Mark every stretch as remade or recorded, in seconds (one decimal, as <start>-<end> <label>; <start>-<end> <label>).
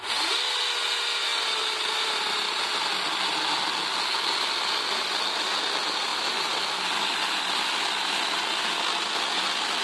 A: 0.0-9.8 recorded